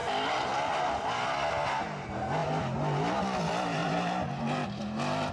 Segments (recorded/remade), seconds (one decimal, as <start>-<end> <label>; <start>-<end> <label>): 0.0-3.8 recorded; 3.8-5.3 remade